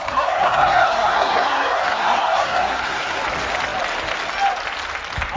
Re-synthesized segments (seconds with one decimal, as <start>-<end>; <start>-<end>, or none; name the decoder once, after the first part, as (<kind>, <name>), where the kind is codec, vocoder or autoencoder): 0.0-3.2 (codec, SNAC)

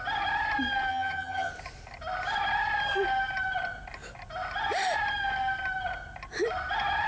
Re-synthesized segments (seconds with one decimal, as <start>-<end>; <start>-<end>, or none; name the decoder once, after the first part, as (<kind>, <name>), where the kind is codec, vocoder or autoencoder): 0.9-1.5 (vocoder, HiFi-GAN)

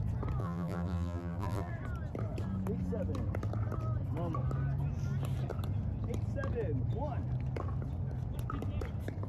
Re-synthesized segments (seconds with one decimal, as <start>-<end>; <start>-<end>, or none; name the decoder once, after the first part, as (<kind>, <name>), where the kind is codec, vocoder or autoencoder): 0.4-1.7 (vocoder, BigVGAN v2)

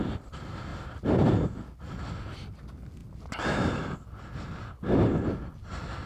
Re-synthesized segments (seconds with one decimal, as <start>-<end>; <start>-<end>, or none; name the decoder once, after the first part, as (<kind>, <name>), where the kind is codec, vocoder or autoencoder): none

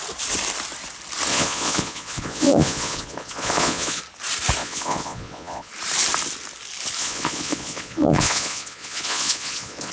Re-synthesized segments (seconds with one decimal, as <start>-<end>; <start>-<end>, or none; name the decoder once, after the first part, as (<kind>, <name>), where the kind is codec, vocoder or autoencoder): 1.3-4.0 (vocoder, Vocos); 4.6-5.7; 7.0-9.9

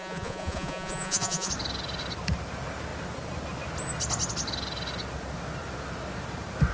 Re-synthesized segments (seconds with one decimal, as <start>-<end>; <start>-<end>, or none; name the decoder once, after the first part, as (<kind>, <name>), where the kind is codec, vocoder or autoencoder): 0.0-1.5 (vocoder, Vocos)